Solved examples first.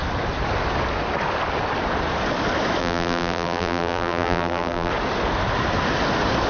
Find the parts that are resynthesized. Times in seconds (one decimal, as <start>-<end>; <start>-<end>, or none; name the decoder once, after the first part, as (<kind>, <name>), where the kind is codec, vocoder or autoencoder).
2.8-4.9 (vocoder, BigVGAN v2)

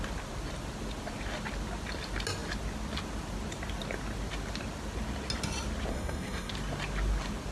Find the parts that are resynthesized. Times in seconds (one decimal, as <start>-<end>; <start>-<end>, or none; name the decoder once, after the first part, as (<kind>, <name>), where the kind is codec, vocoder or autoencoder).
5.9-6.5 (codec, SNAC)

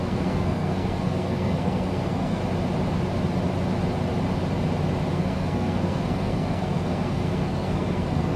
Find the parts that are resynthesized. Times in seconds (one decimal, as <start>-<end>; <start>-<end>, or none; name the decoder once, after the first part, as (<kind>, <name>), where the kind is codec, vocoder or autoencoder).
0.0-2.4 (codec, SNAC); 5.1-8.4

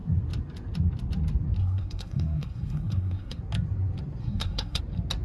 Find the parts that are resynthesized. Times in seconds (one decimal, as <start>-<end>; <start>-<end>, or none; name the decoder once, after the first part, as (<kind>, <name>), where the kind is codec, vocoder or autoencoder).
1.6-3.4 (codec, SNAC); 4.2-4.8

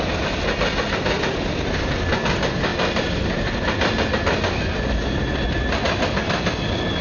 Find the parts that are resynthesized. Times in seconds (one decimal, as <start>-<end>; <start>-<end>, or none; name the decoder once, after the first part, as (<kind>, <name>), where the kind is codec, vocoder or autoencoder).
none

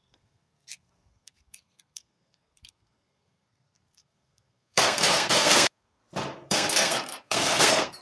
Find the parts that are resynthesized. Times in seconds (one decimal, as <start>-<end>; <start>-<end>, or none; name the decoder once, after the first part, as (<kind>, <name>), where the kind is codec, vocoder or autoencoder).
0.0-6.0 (codec, SNAC); 6.5-8.0